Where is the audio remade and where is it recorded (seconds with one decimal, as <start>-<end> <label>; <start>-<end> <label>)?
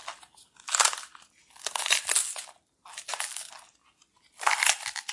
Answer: 0.0-5.1 recorded